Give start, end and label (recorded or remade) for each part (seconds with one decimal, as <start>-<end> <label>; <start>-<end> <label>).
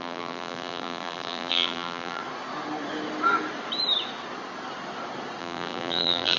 0.0-2.2 remade; 2.2-5.4 recorded; 5.4-6.4 remade